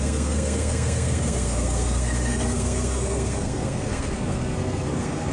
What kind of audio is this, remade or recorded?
remade